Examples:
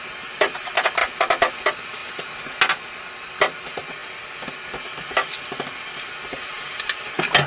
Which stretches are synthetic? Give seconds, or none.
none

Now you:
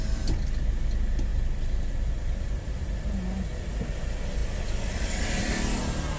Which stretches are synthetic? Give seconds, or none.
1.3-3.6 (vocoder, BigVGAN v2)

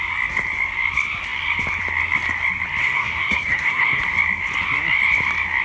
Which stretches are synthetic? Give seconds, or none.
2.8-4.0 (codec, SNAC)

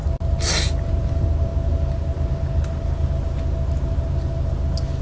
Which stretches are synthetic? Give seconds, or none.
none

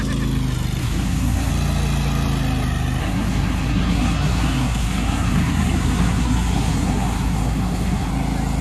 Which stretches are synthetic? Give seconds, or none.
0.8-1.5 (codec, SNAC); 3.0-8.1